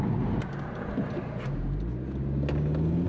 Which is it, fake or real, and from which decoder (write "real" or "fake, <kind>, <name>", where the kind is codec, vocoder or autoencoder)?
real